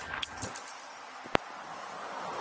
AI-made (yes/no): no